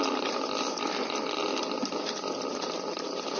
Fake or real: real